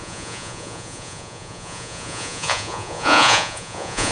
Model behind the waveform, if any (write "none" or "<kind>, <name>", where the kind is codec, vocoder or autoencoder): vocoder, Vocos